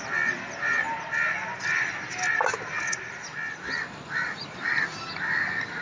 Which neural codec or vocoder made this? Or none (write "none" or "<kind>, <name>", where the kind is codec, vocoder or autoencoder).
none